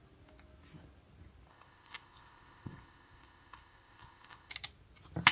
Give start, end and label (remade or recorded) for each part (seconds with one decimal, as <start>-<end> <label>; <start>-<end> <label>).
0.0-1.5 recorded; 1.5-4.5 remade; 4.5-5.3 recorded